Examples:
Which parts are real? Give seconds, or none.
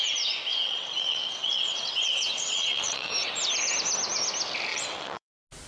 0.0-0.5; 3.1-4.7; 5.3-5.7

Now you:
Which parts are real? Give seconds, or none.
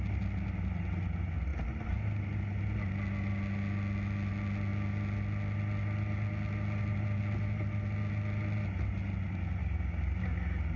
0.0-9.6; 10.2-10.8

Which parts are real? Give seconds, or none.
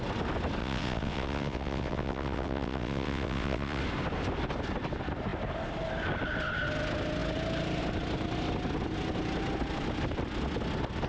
0.0-0.6; 3.8-11.1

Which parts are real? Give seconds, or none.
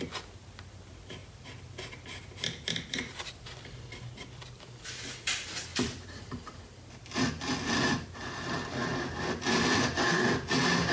0.0-1.2; 5.2-5.7; 6.7-10.9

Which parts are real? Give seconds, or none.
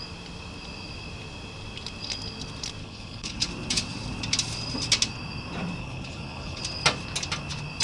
0.0-2.8; 3.5-5.8; 6.6-7.8